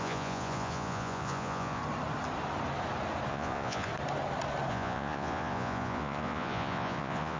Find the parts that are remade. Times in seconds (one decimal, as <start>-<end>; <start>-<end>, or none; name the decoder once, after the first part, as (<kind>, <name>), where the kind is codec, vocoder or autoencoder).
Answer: 0.0-1.8 (vocoder, Vocos); 3.3-3.9; 4.7-7.4